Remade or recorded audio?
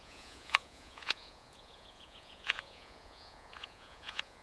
remade